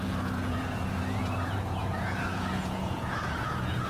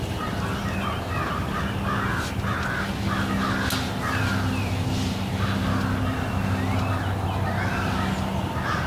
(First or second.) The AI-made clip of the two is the first